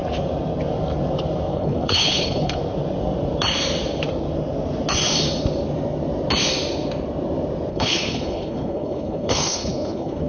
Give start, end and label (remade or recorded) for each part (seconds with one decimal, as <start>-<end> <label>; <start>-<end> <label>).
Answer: 0.0-1.5 recorded; 1.5-2.6 remade; 2.6-7.7 recorded; 7.7-10.3 remade